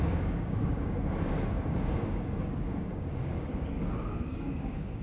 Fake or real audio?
fake